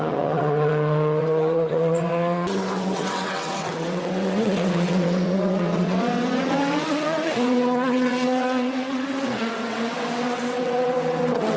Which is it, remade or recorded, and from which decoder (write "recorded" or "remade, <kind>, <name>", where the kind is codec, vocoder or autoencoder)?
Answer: remade, vocoder, WaveNeXt